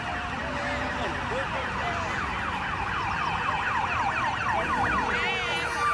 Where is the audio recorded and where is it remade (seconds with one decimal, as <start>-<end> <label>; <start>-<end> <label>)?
0.0-5.9 recorded